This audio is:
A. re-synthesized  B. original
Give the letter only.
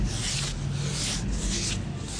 B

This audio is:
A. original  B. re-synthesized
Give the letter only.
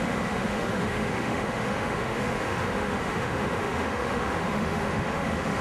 B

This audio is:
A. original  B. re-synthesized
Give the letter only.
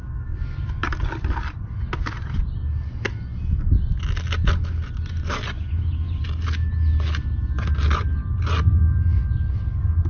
A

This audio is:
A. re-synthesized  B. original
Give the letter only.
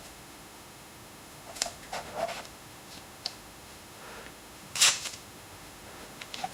A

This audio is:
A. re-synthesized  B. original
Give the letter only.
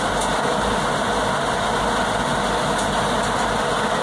B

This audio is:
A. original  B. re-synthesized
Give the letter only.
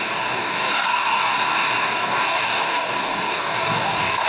B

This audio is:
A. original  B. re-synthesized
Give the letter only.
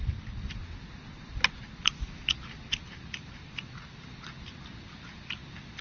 A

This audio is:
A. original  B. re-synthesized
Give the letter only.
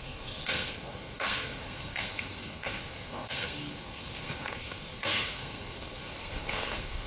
B